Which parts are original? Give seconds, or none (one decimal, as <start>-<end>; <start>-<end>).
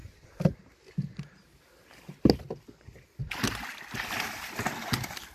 0.0-5.3